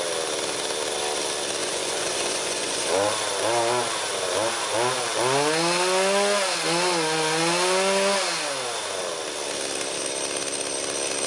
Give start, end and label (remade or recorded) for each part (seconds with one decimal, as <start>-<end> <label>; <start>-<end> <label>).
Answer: 0.0-1.6 recorded; 1.6-2.9 remade; 2.9-11.3 recorded